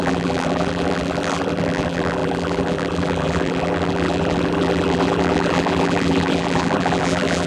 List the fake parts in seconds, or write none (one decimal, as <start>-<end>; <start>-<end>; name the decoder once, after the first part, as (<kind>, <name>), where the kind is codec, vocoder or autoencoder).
0.0-7.5 (vocoder, BigVGAN v2)